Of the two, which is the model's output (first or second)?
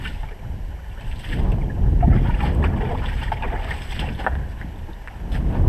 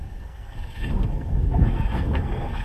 second